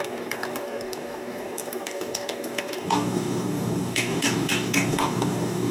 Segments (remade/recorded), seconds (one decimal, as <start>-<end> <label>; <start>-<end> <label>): 0.0-5.7 remade